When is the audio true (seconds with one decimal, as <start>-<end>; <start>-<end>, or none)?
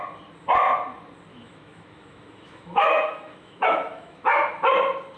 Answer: 0.0-1.3; 4.4-5.2